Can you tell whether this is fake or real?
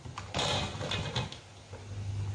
real